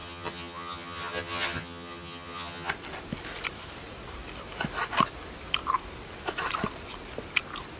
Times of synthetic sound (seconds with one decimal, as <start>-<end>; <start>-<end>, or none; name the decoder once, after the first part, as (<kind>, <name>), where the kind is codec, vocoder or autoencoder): 0.0-2.7 (vocoder, HiFi-GAN)

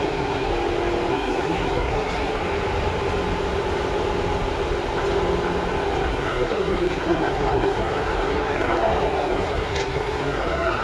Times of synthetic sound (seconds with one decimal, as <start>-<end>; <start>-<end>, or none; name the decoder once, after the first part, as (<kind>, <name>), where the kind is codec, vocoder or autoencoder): 0.0-0.5 (codec, SNAC); 1.1-2.4; 6.1-10.8

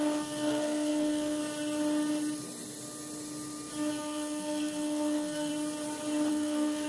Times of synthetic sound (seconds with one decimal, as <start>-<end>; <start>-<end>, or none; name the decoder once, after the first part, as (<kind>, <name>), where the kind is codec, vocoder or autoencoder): 0.0-1.4 (codec, SNAC); 3.9-5.5; 6.3-6.9

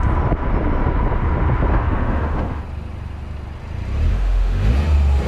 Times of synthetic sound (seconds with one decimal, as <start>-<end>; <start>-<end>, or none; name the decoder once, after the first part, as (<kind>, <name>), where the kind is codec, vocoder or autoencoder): 1.7-2.6 (autoencoder, DAC-VAE); 4.1-4.7

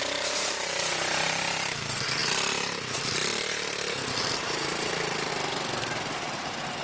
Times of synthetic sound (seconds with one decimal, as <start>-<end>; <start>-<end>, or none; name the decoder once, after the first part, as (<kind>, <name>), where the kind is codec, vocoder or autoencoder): 0.0-2.2 (vocoder, BigVGAN v2); 4.4-5.3

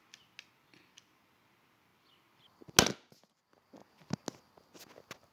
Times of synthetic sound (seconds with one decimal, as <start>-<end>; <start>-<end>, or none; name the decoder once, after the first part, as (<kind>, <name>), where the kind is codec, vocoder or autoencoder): none

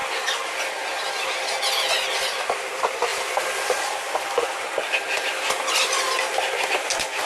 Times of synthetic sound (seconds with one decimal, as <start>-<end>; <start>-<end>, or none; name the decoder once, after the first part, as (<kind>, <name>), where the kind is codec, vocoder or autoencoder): 3.1-3.7 (vocoder, BigVGAN v2)

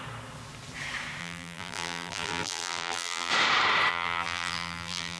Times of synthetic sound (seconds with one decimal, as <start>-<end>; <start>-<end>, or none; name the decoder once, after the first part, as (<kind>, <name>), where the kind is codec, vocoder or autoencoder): 1.2-3.3 (vocoder, BigVGAN v2); 3.9-5.2